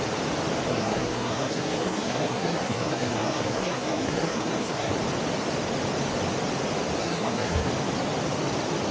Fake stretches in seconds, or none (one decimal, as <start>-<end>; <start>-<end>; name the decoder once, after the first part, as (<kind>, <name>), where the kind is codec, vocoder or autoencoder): 0.7-4.9 (codec, SNAC); 7.0-7.7

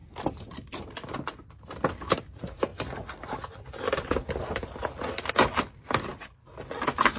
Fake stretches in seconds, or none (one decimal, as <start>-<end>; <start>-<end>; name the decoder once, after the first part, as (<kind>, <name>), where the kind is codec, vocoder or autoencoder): none

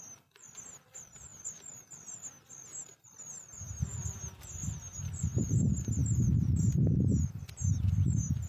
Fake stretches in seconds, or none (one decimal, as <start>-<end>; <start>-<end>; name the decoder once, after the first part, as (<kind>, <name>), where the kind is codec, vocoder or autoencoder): none

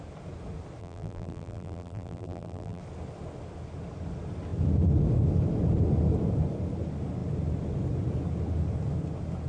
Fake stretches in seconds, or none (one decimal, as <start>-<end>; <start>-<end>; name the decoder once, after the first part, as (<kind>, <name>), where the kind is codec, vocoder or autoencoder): 0.8-2.8 (vocoder, BigVGAN v2)